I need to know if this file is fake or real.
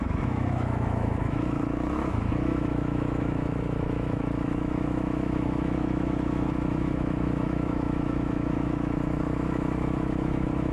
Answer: fake